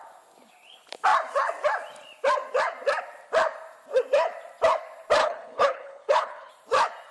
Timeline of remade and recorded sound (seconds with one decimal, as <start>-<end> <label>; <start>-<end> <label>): 0.0-5.2 recorded; 5.2-6.5 remade; 6.5-7.1 recorded